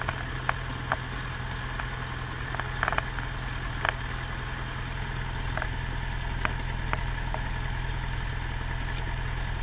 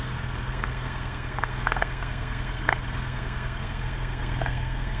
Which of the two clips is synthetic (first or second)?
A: second